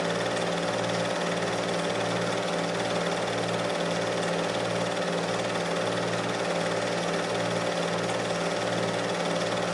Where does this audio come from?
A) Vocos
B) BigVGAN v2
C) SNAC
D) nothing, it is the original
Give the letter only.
D